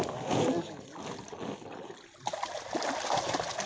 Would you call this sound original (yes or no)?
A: yes